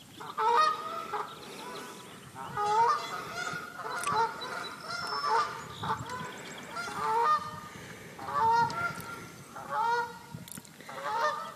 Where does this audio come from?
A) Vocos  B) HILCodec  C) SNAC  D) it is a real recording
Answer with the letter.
D